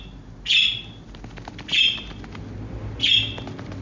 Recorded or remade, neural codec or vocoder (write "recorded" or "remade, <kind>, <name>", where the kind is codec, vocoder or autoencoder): recorded